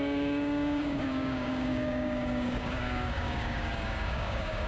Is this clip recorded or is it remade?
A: remade